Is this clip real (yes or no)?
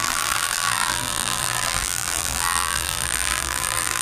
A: no